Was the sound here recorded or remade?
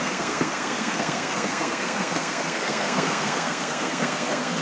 remade